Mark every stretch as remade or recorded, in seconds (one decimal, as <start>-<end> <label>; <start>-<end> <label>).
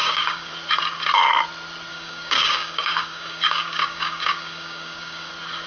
0.0-0.5 remade; 0.5-1.9 recorded; 1.9-5.3 remade; 5.3-5.7 recorded